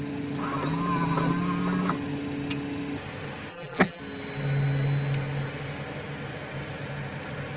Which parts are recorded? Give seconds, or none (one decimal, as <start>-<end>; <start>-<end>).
0.0-3.5; 4.0-7.6